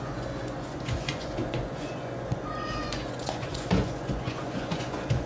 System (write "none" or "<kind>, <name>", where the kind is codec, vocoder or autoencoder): vocoder, Vocos